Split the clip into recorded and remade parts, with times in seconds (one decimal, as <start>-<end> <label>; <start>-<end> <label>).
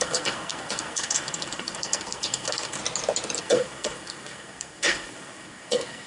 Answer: 0.0-2.8 remade; 2.8-3.4 recorded; 3.4-6.1 remade